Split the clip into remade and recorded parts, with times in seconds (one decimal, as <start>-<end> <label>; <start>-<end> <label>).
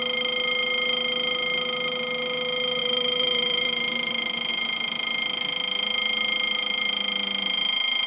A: 0.0-2.8 recorded; 2.8-4.5 remade; 4.5-8.1 recorded